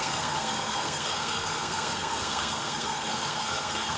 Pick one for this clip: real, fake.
fake